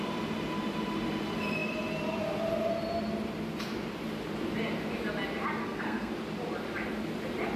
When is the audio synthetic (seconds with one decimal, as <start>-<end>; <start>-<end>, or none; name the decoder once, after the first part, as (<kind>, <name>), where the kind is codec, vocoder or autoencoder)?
5.6-6.1 (codec, SNAC)